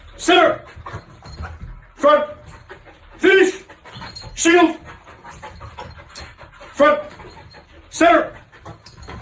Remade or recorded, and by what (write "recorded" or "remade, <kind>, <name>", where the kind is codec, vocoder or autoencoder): recorded